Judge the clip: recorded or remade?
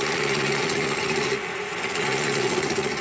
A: remade